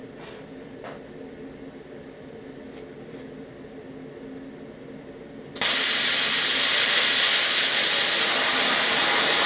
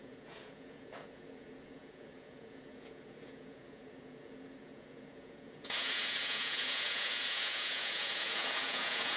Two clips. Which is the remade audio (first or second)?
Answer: second